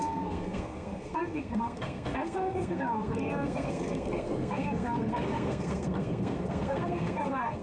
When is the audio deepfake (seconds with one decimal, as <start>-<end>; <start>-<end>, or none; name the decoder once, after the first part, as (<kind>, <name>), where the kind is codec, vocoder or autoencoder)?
0.0-7.6 (codec, SNAC)